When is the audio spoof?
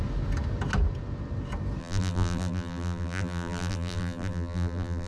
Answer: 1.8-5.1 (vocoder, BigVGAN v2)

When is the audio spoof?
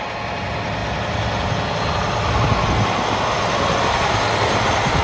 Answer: none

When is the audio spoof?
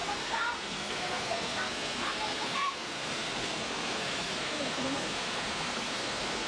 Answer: 0.0-6.5 (codec, SNAC)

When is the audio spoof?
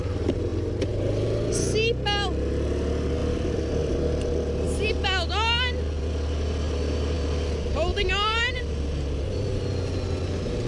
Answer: 0.5-1.5 (vocoder, BigVGAN v2); 3.2-3.7; 7.9-8.6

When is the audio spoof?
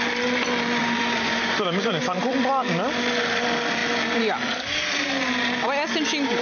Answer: 0.8-2.2 (vocoder, BigVGAN v2)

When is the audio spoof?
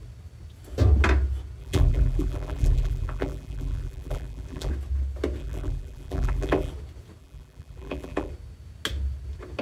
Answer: 1.6-4.7 (vocoder, BigVGAN v2); 5.4-6.7; 7.2-8.3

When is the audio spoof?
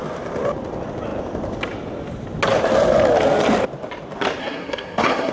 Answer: 4.4-5.3 (codec, SNAC)